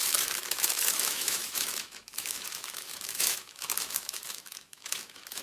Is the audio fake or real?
fake